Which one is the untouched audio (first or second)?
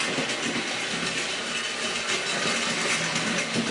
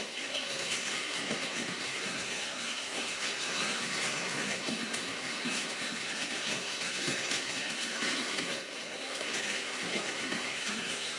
first